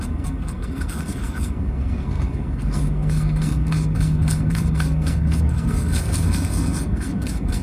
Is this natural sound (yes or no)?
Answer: no